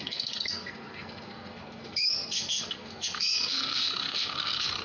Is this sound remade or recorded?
remade